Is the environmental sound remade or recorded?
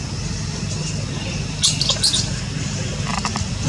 recorded